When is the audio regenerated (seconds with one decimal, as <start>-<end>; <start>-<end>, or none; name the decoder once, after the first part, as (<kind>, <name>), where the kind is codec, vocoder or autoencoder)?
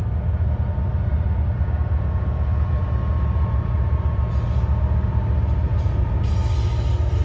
3.6-4.2 (vocoder, BigVGAN v2); 5.7-6.3